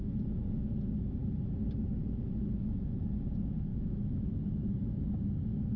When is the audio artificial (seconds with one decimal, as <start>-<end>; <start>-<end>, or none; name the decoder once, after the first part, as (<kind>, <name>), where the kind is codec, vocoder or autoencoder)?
3.7-5.0 (autoencoder, DAC-VAE)